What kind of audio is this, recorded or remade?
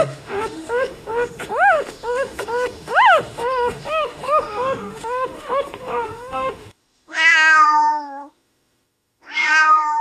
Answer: remade